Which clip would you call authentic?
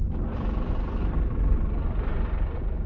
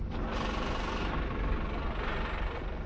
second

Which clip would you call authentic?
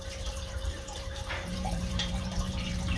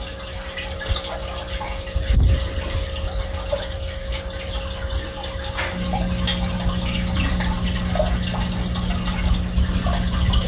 second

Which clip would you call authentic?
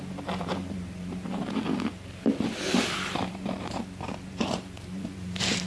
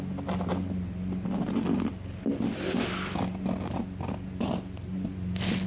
second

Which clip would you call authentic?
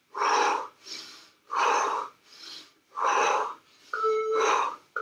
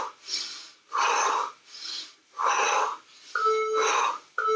second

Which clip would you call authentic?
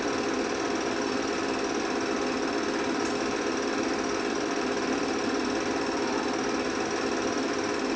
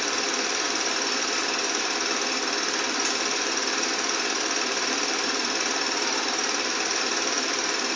first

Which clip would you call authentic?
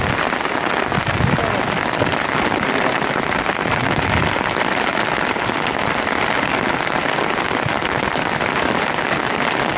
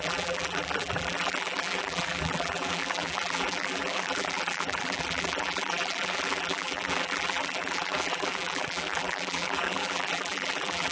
first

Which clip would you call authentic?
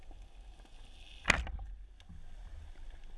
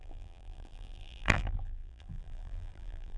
first